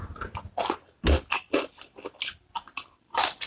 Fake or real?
real